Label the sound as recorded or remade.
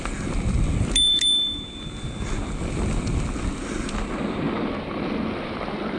recorded